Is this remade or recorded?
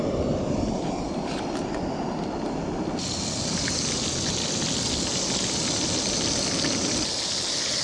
recorded